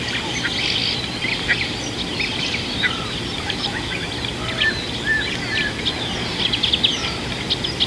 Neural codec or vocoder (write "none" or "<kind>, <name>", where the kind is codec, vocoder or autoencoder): none